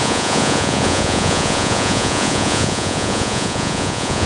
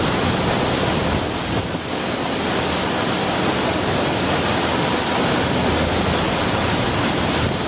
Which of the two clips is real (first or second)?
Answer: second